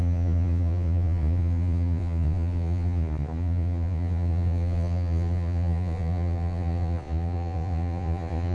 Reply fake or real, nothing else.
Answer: fake